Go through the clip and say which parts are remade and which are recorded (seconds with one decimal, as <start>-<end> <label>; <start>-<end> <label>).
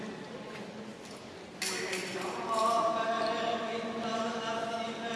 0.0-5.2 recorded